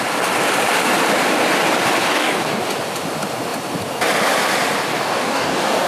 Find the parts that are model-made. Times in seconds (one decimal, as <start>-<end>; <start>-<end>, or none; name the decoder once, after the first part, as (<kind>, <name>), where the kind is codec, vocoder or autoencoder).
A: 2.1-2.6 (codec, DAC); 4.9-5.9